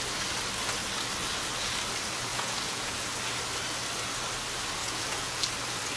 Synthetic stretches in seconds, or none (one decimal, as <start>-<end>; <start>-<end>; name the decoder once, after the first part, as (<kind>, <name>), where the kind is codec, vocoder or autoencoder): 2.3-3.1 (vocoder, Vocos); 4.8-5.4